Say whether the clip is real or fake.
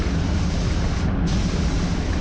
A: real